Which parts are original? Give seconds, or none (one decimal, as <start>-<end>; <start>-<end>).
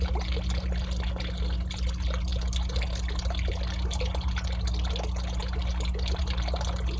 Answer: 0.0-7.0